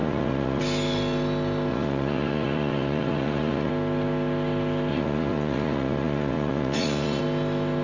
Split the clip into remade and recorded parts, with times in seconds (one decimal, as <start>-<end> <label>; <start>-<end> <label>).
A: 0.0-0.6 remade; 0.6-1.7 recorded; 1.7-3.7 remade; 3.7-4.9 recorded; 4.9-7.2 remade; 7.2-7.8 recorded